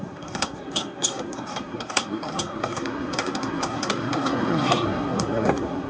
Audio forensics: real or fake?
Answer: fake